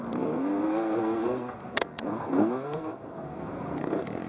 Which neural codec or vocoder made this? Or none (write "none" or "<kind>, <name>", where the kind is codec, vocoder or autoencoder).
codec, SNAC